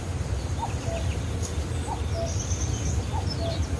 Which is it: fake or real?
real